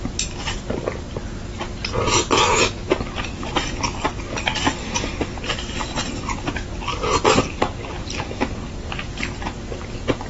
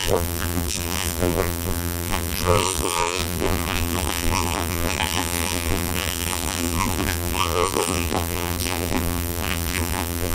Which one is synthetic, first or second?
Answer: second